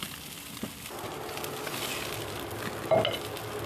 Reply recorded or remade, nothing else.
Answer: recorded